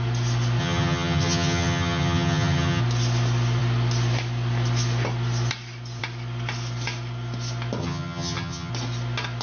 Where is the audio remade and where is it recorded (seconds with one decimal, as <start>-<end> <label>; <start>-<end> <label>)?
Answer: 0.0-0.6 recorded; 0.6-2.8 remade; 2.8-7.8 recorded; 7.8-8.7 remade; 8.7-9.4 recorded